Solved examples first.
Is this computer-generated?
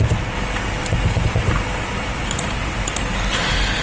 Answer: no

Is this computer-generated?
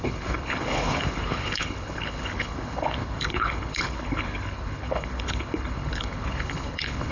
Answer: yes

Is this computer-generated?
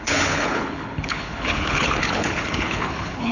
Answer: yes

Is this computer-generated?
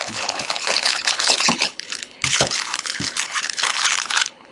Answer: yes